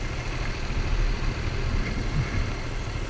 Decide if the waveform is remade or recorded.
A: recorded